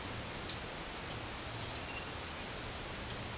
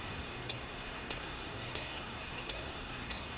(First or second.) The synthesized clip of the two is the second